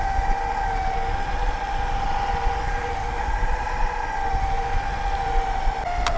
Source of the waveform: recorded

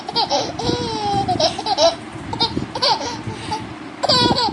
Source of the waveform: recorded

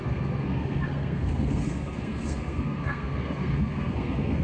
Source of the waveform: remade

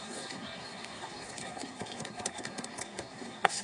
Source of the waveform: remade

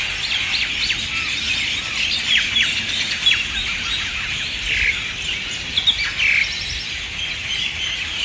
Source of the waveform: recorded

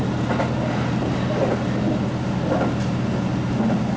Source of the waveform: recorded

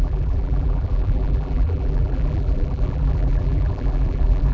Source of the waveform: remade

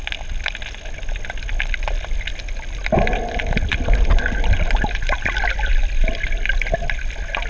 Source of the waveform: recorded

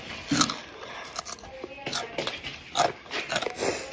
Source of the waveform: recorded